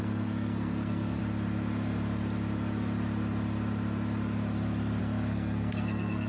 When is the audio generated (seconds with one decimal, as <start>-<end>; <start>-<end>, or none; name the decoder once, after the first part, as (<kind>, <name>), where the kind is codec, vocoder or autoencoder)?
0.0-1.2 (codec, SNAC); 5.0-6.3